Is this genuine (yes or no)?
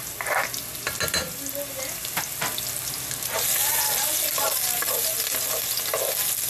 yes